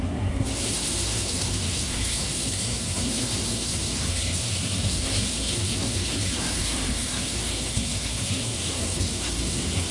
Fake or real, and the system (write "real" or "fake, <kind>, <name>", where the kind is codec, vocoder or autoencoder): fake, codec, SNAC